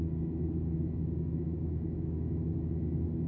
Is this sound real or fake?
real